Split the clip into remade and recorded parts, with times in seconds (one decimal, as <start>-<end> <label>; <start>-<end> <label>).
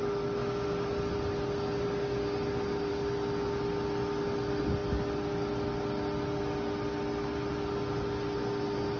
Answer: 0.0-9.0 recorded